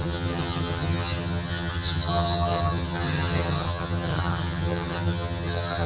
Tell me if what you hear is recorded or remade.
remade